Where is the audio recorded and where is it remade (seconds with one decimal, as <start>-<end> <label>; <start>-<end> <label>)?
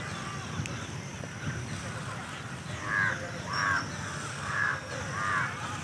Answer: 0.0-4.3 recorded; 4.3-4.9 remade; 4.9-5.8 recorded